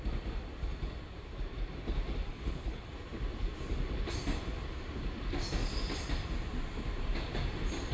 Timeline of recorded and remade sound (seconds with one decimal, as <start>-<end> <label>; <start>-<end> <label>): 0.0-2.3 recorded; 2.3-2.9 remade; 2.9-7.9 recorded